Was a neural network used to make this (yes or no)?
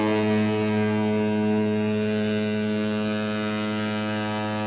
no